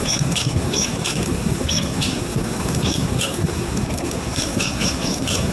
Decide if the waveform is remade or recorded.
remade